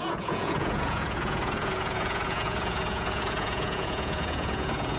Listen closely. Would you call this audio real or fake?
fake